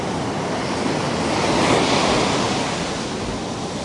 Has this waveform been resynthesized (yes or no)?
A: no